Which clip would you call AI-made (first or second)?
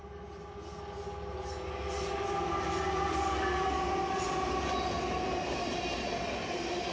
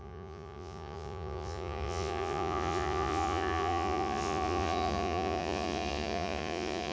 second